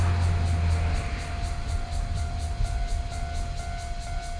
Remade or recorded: recorded